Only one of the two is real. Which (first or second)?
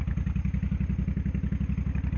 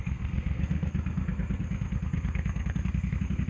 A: first